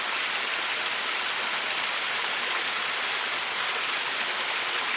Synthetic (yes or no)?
no